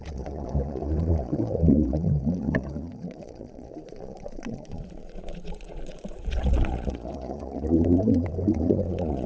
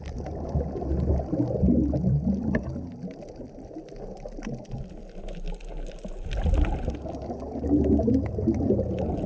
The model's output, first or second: first